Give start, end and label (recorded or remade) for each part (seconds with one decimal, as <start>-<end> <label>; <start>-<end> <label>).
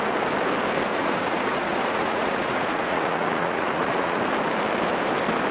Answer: 0.0-0.9 recorded; 0.9-4.2 remade; 4.2-5.5 recorded